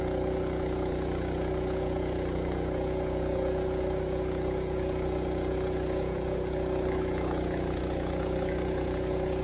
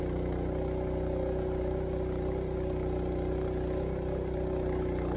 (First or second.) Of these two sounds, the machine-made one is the first